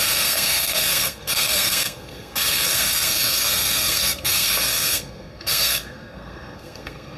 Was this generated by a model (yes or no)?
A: yes